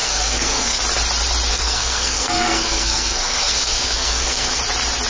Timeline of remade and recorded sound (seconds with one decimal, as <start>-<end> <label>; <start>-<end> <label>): 0.0-0.8 remade; 0.8-1.5 recorded; 1.5-4.6 remade; 4.6-5.1 recorded